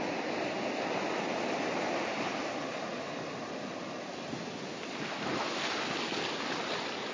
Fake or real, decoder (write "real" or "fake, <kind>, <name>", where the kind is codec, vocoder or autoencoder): real